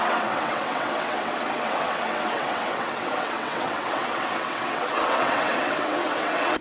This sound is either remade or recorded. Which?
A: remade